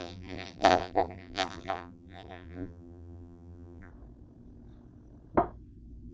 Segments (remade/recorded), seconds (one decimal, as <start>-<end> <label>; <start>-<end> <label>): 0.0-3.9 remade; 3.9-6.1 recorded